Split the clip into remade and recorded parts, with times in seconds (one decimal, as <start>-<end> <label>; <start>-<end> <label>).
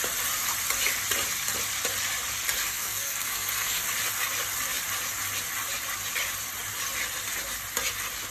0.0-2.6 recorded; 2.6-3.8 remade; 3.8-8.3 recorded